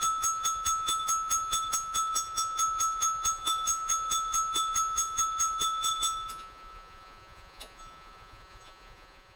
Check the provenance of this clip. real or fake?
fake